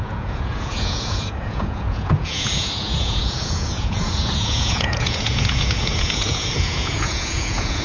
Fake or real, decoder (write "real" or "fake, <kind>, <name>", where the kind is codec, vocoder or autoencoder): fake, vocoder, Vocos